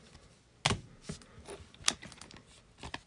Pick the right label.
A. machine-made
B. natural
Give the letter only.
B